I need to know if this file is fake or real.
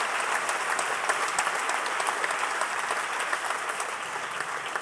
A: real